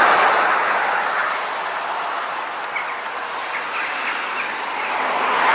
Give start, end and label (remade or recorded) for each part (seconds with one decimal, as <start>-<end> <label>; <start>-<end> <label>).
0.0-5.5 recorded